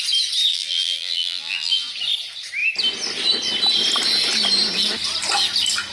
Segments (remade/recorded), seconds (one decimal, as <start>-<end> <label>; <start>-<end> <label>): 0.0-0.5 recorded; 0.5-1.9 remade; 1.9-5.9 recorded